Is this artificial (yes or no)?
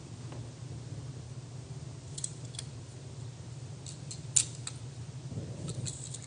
no